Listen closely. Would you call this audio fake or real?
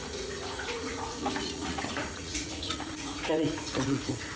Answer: fake